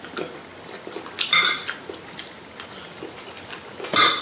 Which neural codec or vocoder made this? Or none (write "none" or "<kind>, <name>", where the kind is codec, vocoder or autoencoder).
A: none